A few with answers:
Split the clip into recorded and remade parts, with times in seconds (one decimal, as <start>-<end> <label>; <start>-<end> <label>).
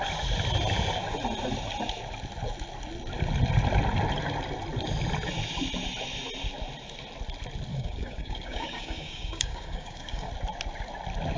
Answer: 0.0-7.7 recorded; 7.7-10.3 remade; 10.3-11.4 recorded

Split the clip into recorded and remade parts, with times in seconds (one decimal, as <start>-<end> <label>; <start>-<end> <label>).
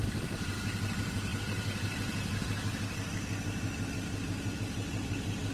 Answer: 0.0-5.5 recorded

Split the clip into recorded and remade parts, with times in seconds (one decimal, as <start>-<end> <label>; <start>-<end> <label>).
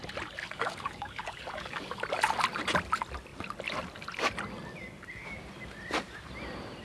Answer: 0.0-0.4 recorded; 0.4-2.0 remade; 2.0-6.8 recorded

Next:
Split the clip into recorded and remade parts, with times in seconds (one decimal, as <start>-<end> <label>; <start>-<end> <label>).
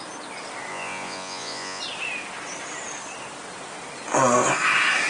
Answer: 0.0-0.7 recorded; 0.7-1.8 remade; 1.8-5.1 recorded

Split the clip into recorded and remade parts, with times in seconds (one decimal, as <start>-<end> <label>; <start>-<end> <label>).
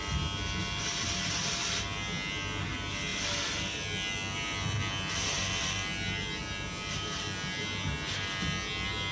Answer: 0.0-9.1 recorded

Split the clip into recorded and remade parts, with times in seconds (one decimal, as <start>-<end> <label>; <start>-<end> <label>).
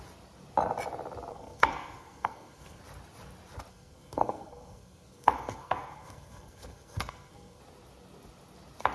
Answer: 0.0-1.3 recorded; 1.3-2.8 remade; 2.8-3.7 recorded; 3.7-7.6 remade; 7.6-8.9 recorded